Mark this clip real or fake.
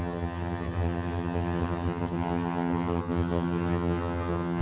fake